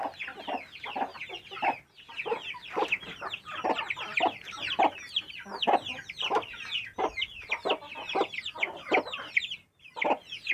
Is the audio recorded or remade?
recorded